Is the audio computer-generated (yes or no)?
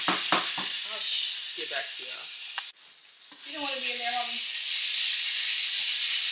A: no